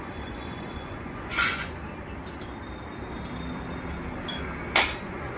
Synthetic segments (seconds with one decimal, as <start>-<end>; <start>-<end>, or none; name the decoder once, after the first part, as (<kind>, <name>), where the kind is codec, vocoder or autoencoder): 0.0-1.8 (vocoder, Vocos); 5.0-5.4